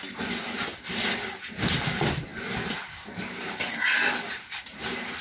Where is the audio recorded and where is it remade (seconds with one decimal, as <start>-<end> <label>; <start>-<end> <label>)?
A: 0.0-5.2 recorded